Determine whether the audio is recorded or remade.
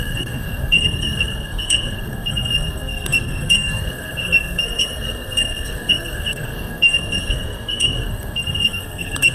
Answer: remade